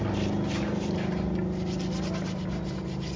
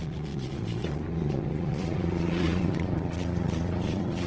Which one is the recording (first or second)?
first